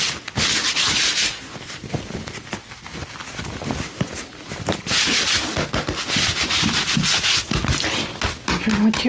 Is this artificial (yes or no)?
no